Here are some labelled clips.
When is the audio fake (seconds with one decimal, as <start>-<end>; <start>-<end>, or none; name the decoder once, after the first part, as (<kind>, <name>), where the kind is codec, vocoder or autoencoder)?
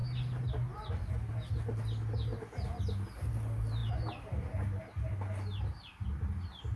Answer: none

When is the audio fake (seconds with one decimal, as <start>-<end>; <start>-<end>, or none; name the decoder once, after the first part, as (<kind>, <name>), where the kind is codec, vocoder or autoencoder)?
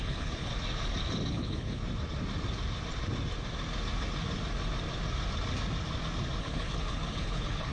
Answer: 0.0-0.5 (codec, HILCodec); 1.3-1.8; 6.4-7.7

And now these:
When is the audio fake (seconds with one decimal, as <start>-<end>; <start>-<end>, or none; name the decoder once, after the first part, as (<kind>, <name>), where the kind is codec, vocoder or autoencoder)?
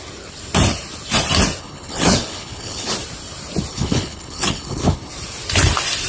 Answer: 1.6-2.9 (codec, HILCodec); 3.7-5.1